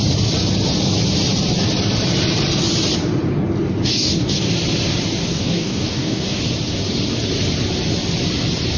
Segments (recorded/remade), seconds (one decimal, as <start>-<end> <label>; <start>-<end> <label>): 0.0-3.9 recorded; 3.9-4.5 remade; 4.5-5.3 recorded; 5.3-6.4 remade; 6.4-8.8 recorded